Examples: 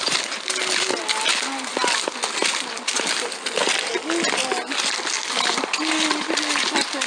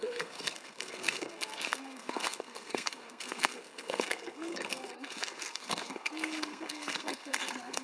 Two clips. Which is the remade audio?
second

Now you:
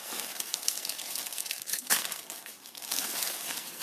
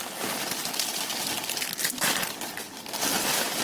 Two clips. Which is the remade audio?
first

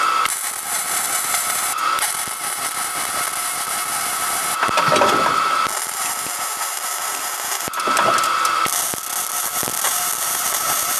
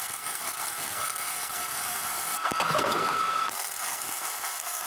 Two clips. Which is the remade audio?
second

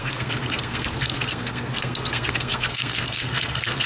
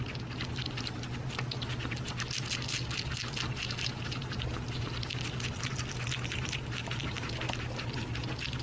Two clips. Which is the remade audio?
first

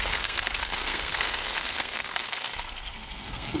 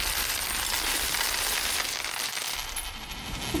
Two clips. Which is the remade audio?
first